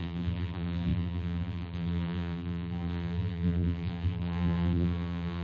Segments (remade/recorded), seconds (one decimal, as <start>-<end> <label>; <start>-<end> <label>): 0.0-5.4 remade